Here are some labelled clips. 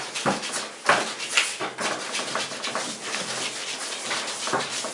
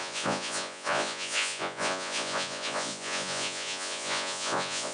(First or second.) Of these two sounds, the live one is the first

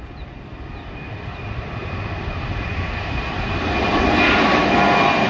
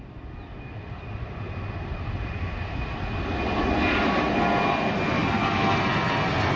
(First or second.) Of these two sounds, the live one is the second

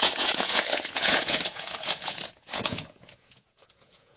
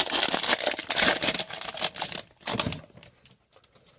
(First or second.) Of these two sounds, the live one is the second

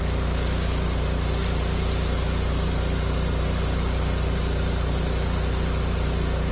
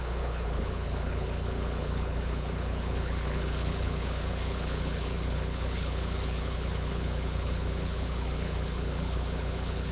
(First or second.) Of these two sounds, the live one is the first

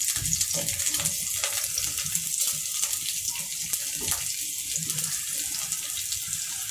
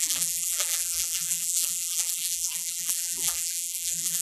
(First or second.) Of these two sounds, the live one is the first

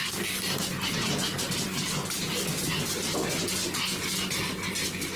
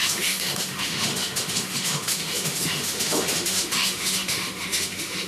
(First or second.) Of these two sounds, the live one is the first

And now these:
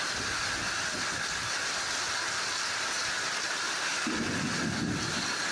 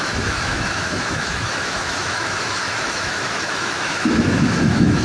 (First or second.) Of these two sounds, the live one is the first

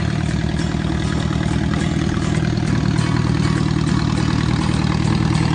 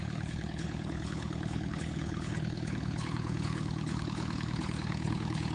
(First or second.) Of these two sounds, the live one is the first